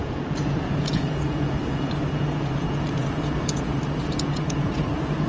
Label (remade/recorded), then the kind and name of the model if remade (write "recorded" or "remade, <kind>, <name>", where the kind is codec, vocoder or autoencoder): remade, vocoder, Vocos